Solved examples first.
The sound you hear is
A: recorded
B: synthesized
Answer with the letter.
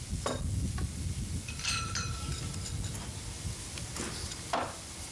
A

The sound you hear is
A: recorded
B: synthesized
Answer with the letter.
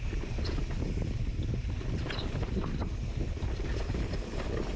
A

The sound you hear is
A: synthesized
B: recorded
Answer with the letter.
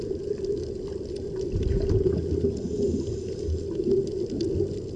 B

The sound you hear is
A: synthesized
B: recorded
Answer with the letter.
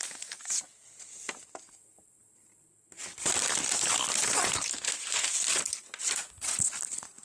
B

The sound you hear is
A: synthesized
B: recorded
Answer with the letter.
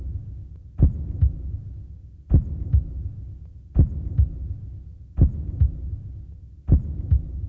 B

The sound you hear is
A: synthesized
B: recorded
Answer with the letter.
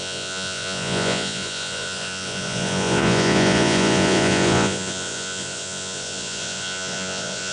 A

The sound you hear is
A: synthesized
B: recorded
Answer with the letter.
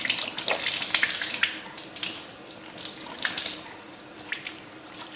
B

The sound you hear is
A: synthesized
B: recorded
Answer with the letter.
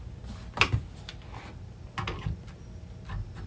B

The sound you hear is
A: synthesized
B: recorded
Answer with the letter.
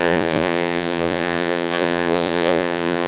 A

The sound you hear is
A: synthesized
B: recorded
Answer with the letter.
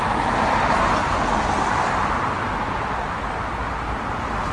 B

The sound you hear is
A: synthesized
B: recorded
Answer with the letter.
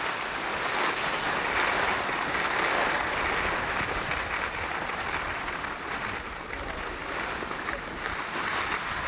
B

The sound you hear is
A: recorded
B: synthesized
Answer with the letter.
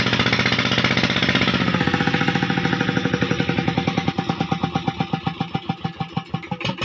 A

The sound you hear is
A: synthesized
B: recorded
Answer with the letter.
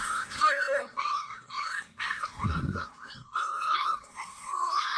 A